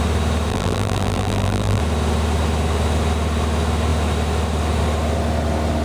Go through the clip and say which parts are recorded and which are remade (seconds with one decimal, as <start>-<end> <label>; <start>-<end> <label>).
0.0-0.5 recorded; 0.5-1.8 remade; 1.8-5.8 recorded